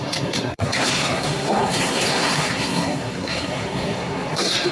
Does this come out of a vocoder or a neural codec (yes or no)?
yes